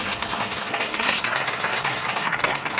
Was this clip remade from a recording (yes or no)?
yes